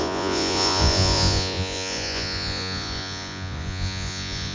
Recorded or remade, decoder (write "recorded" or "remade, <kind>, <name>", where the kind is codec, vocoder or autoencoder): remade, vocoder, Vocos